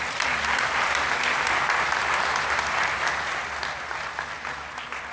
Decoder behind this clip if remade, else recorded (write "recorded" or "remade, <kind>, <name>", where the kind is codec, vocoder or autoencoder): recorded